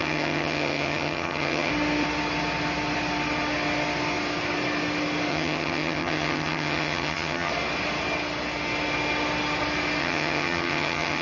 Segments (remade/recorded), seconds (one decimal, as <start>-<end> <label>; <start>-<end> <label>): 0.0-1.7 remade; 1.7-5.3 recorded; 5.3-7.5 remade; 7.5-10.0 recorded; 10.0-11.2 remade